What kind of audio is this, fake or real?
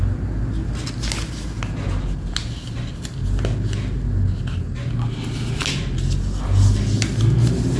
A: real